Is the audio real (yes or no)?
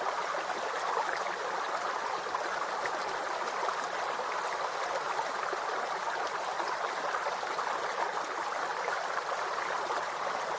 yes